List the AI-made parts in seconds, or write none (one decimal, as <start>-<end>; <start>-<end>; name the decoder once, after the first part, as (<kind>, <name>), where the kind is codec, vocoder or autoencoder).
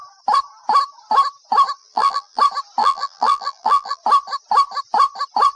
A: 1.8-2.4 (vocoder, BigVGAN v2); 2.8-4.0